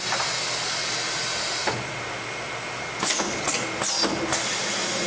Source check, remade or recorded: recorded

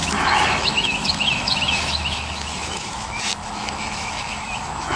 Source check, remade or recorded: remade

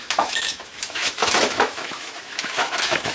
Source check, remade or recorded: remade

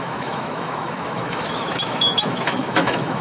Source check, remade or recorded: remade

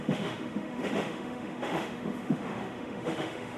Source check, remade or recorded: remade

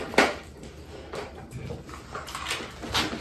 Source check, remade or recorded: recorded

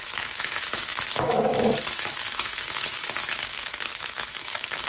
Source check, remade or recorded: remade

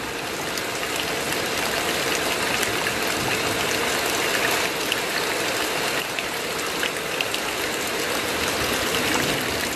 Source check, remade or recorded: recorded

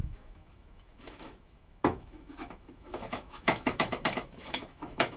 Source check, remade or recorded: remade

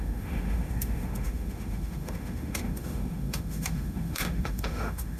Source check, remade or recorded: remade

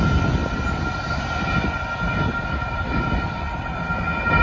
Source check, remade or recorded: recorded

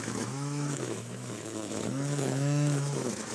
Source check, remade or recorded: remade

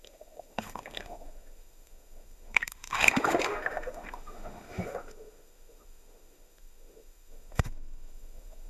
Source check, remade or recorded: remade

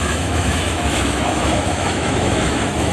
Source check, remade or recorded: remade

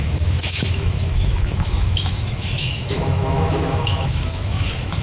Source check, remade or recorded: remade